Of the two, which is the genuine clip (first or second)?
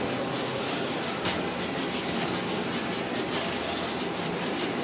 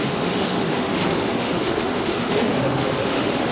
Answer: first